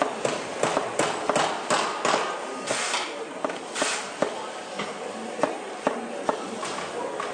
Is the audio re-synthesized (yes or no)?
no